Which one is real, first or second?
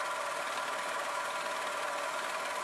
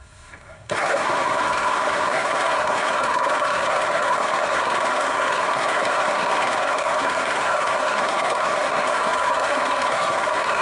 first